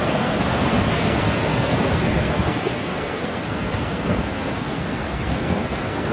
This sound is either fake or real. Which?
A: fake